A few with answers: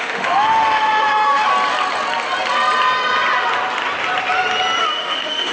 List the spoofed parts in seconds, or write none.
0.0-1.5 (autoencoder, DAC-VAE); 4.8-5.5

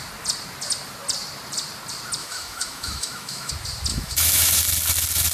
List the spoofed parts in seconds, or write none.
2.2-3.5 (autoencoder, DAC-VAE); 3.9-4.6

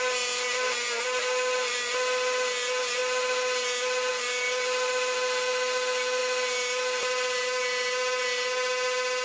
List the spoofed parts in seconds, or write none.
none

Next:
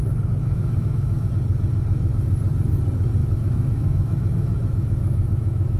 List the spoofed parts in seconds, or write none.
0.4-1.3 (autoencoder, DAC-VAE); 3.2-5.8